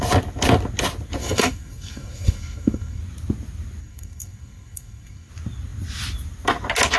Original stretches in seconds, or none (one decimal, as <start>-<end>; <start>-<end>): 0.0-1.2; 3.0-3.8; 5.3-7.0